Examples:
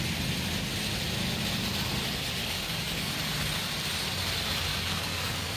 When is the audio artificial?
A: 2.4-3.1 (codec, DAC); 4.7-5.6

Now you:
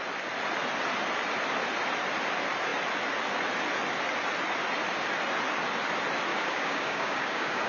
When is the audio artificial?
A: 6.3-7.7 (codec, DAC)